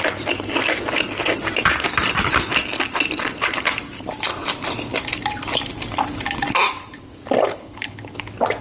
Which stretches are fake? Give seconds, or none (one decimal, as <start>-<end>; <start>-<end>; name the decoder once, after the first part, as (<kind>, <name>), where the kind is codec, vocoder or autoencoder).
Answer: 7.5-8.2 (codec, HILCodec)